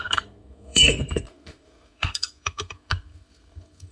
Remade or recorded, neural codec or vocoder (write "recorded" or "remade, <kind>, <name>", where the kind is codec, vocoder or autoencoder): remade, codec, SNAC